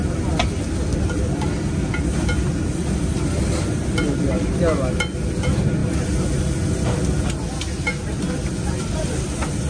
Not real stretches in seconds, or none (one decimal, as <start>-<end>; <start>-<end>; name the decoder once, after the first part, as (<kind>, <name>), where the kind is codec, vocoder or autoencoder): none